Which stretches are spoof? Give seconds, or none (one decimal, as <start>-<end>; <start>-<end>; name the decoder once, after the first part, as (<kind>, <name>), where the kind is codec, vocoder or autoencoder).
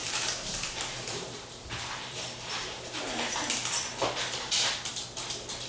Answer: 0.0-3.4 (vocoder, BigVGAN v2)